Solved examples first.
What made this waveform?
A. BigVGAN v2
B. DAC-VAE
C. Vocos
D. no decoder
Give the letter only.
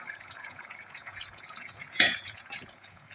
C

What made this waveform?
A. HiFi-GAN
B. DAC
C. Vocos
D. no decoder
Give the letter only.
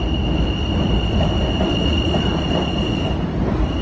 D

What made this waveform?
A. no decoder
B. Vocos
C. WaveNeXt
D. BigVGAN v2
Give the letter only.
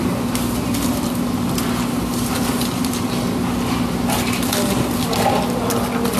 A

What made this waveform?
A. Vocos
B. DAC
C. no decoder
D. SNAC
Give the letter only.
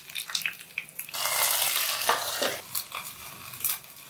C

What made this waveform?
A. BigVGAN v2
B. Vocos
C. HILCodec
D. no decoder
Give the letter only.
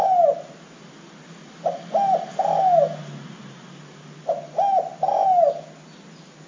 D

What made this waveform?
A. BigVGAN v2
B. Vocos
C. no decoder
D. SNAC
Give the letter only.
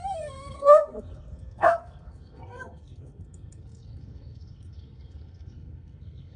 D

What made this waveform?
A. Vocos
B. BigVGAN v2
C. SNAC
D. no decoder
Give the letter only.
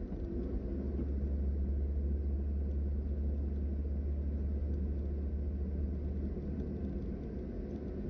D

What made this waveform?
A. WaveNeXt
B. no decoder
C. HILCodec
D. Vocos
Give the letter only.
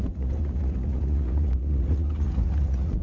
D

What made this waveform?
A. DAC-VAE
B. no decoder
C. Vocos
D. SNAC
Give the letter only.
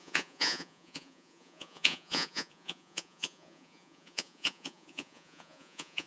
C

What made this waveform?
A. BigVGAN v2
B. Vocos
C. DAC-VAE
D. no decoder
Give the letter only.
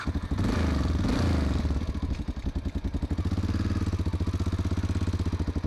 D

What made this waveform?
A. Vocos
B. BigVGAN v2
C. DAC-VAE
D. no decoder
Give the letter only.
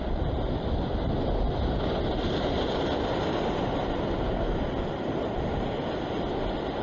D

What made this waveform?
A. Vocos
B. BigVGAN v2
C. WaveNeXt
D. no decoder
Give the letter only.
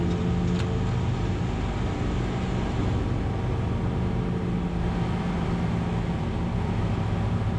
D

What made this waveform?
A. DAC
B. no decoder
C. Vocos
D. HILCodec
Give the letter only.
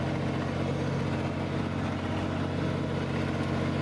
B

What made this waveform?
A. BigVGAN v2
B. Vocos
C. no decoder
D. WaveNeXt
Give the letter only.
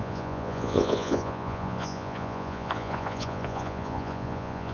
B